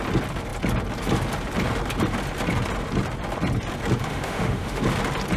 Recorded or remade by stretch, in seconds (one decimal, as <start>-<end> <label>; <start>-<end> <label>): 0.0-4.1 recorded; 4.1-4.8 remade; 4.8-5.4 recorded

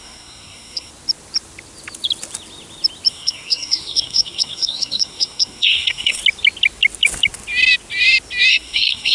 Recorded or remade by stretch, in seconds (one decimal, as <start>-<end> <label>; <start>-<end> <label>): 0.0-0.9 remade; 0.9-3.1 recorded; 3.1-6.2 remade; 6.2-8.5 recorded; 8.5-9.1 remade